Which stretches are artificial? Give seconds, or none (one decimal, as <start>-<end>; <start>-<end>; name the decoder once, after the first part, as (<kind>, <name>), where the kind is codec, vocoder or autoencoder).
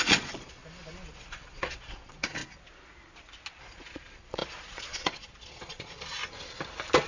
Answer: 0.0-0.6 (vocoder, Vocos); 1.1-2.4; 3.6-6.2